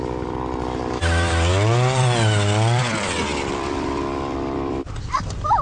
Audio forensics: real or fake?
fake